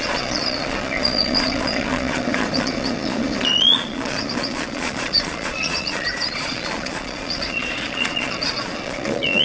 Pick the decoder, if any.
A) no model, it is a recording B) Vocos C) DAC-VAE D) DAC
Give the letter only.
B